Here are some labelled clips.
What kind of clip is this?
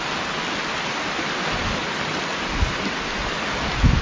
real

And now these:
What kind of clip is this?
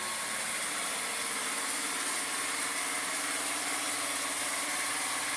real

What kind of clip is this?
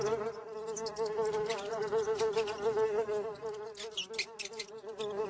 real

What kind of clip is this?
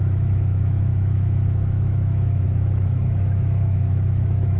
fake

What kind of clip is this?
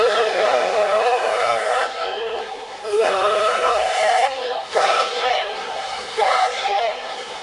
fake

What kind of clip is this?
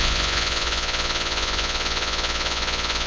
fake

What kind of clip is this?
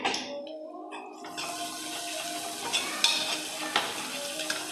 real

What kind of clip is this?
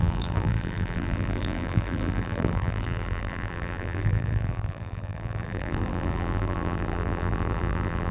fake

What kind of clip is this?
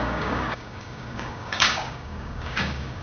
fake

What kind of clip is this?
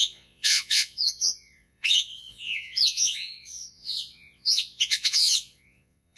fake